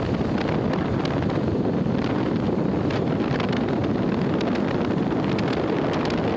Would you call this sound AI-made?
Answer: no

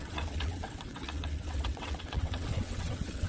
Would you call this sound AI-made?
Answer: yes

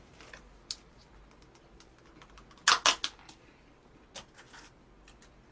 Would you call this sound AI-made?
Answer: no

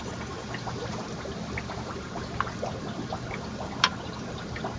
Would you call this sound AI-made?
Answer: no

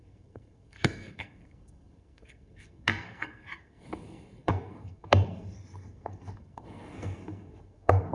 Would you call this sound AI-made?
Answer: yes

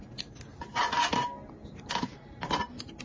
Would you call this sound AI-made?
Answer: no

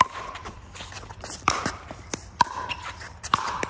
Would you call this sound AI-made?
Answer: yes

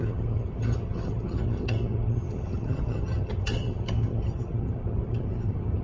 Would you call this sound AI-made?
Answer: yes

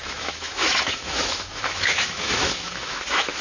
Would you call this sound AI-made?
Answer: yes